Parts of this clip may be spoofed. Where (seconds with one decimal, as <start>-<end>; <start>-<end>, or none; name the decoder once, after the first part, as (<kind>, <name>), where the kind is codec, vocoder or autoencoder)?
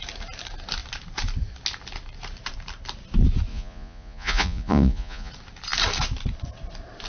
3.5-5.3 (vocoder, Vocos)